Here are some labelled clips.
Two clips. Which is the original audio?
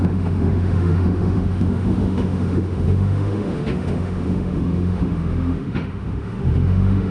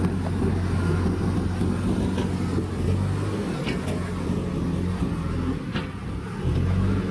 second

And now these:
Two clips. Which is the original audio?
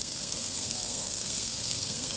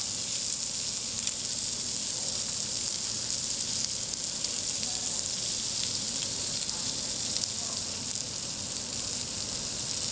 second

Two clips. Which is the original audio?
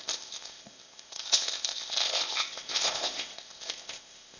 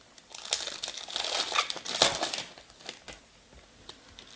second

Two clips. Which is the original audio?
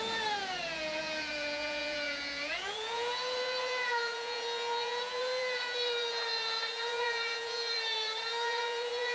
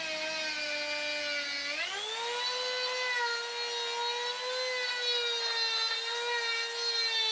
second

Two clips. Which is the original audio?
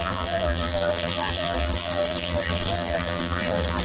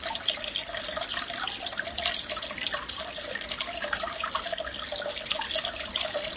second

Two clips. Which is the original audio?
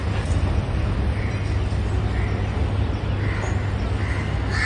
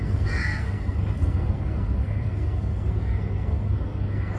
first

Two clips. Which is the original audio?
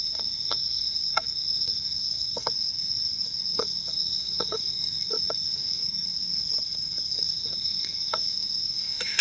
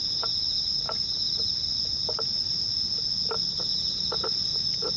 second